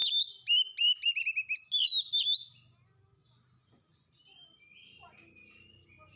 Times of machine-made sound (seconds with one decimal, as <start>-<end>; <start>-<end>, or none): none